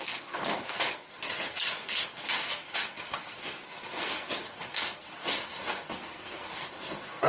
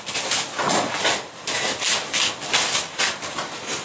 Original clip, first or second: second